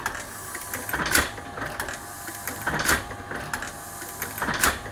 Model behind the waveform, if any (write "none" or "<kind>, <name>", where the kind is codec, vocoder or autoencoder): none